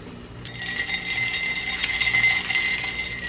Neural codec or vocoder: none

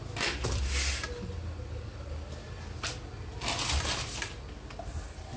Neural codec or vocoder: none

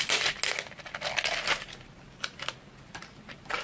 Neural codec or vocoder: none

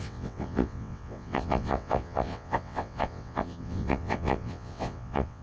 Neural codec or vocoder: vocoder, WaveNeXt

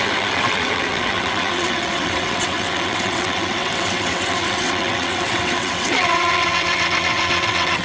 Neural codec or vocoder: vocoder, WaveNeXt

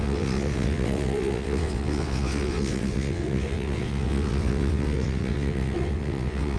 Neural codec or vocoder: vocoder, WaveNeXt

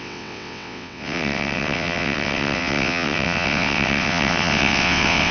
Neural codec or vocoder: vocoder, WaveNeXt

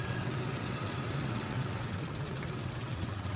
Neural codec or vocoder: vocoder, WaveNeXt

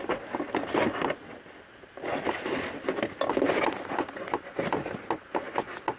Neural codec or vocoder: none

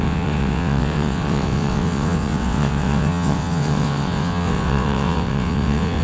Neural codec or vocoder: vocoder, WaveNeXt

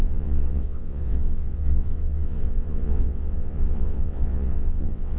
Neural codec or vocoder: vocoder, WaveNeXt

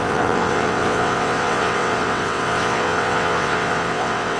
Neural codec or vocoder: vocoder, WaveNeXt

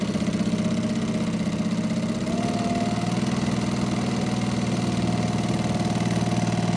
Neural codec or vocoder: none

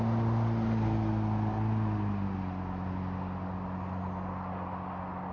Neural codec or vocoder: none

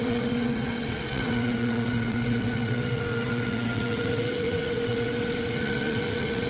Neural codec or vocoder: vocoder, WaveNeXt